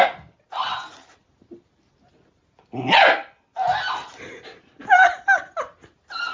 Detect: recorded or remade recorded